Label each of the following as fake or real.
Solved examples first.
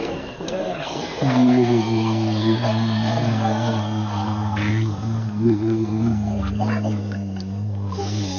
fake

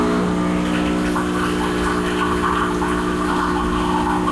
real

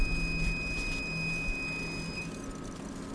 real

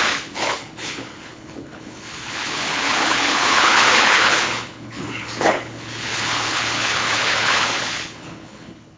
fake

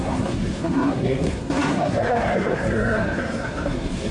fake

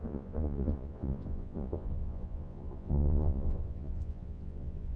fake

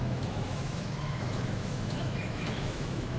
fake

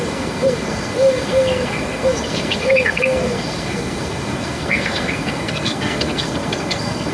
fake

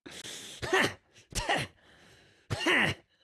real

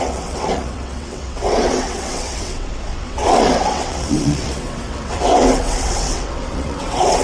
fake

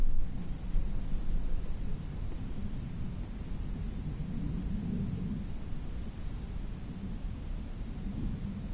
real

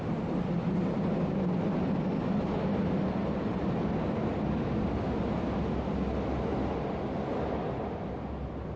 real